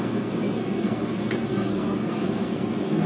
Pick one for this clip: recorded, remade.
remade